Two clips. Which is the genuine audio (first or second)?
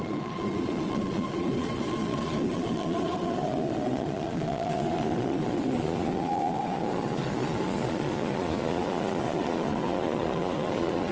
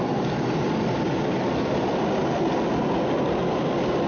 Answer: second